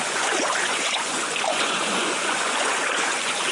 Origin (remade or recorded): remade